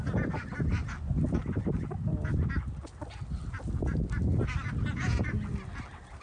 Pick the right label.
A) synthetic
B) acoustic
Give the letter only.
B